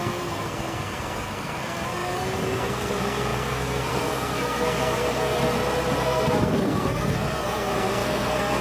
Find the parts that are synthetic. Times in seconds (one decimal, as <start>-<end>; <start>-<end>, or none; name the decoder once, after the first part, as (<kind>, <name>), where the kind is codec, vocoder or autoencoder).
0.0-5.4 (codec, SNAC); 6.0-8.6